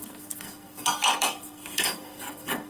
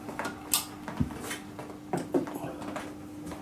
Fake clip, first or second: first